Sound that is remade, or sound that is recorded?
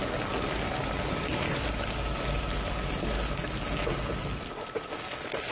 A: recorded